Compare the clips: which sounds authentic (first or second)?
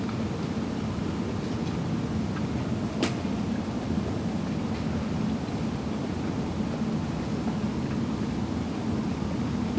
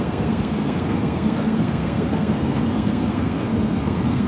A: first